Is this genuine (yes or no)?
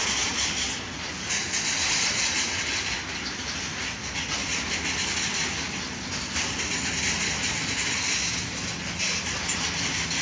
yes